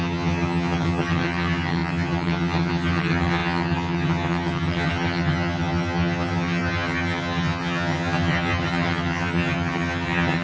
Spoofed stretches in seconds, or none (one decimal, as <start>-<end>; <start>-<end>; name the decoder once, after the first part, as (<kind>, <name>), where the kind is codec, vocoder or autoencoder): 0.0-10.4 (vocoder, HiFi-GAN)